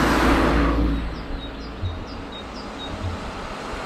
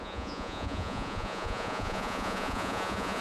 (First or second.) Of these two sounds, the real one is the first